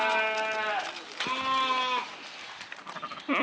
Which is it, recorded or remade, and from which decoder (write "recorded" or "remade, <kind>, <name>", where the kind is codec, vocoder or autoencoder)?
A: recorded